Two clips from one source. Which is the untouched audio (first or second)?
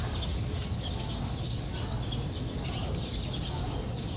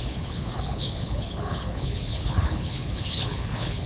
first